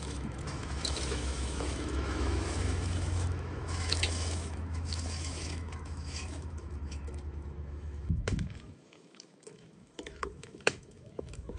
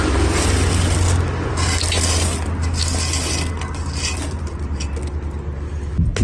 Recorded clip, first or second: second